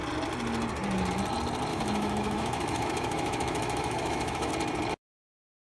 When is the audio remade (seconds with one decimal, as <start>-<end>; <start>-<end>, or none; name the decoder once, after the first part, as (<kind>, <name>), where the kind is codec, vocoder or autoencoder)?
1.7-4.5 (autoencoder, DAC-VAE)